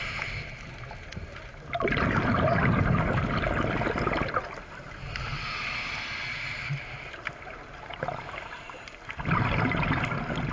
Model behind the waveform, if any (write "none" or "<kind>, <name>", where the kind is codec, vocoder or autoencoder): none